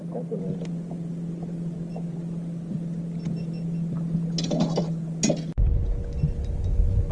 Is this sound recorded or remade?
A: recorded